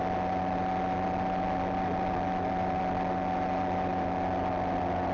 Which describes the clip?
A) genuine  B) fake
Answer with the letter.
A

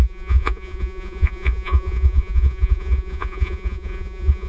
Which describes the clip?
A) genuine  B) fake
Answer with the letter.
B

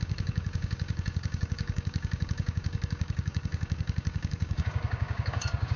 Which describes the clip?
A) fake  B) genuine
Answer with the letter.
A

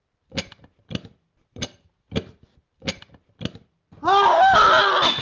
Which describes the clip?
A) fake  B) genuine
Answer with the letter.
B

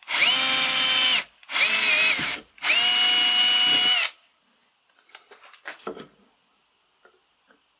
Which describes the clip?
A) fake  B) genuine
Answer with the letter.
B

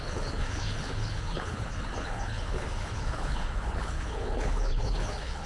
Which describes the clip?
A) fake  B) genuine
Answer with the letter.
A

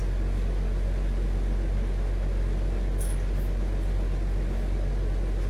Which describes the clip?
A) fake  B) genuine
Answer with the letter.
B